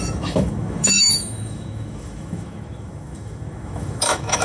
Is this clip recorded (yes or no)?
no